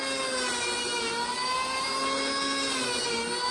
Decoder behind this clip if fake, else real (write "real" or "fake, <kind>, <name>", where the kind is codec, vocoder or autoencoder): real